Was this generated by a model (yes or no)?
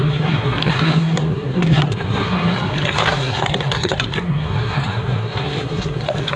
yes